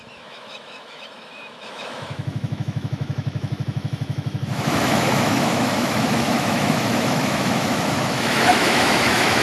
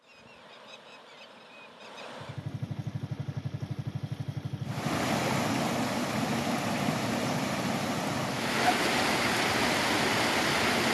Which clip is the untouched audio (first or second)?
second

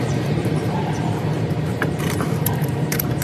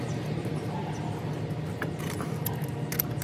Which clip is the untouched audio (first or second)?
second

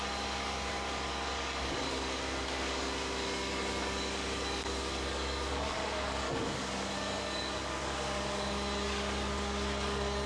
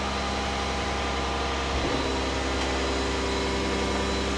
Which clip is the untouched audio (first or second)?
second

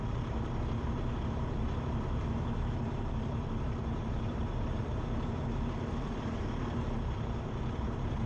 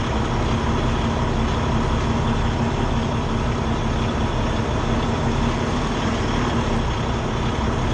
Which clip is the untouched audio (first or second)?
second